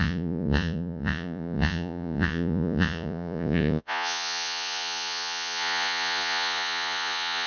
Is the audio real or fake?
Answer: fake